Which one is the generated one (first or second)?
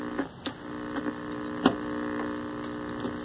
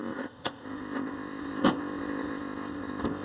second